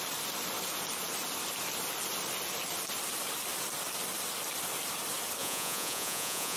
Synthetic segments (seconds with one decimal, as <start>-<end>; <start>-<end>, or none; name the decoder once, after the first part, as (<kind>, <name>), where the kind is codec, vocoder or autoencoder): 5.4-6.6 (vocoder, Vocos)